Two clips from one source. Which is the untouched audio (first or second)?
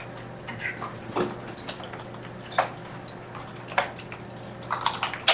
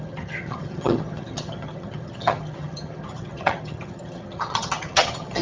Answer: first